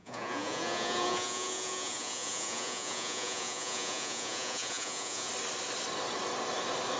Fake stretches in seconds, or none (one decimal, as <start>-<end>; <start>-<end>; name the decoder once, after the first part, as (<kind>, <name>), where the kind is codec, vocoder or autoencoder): 0.0-5.3 (vocoder, Vocos)